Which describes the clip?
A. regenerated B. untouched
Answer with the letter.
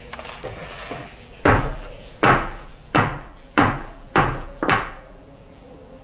A